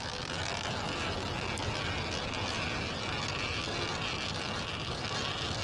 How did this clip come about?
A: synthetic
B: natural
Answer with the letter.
B